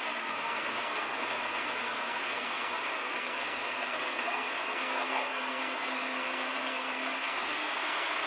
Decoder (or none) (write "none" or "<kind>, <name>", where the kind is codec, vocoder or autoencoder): codec, SNAC